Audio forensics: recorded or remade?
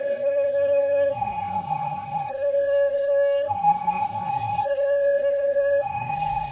remade